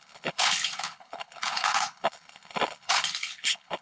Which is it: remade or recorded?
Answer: remade